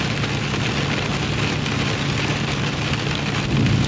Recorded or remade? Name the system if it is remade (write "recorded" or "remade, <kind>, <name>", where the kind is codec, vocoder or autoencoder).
recorded